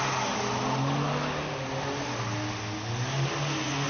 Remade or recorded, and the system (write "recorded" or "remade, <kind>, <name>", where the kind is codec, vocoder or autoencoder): recorded